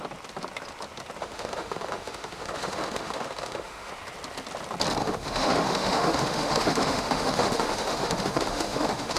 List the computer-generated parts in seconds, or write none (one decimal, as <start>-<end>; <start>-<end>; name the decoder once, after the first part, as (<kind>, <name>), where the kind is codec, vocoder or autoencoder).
1.2-3.9 (autoencoder, DAC-VAE); 5.0-9.2